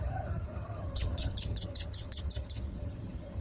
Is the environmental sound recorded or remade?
remade